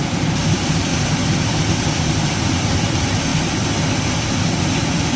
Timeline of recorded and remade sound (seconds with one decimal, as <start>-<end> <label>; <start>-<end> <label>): 0.0-0.9 remade; 0.9-1.8 recorded; 1.8-3.3 remade; 3.3-4.4 recorded; 4.4-5.2 remade